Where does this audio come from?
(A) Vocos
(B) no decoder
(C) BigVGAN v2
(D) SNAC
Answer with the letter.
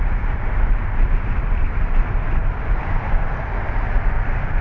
B